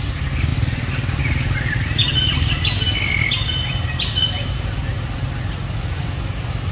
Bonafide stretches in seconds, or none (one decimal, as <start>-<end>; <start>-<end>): 0.0-6.7